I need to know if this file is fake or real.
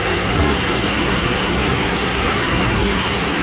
fake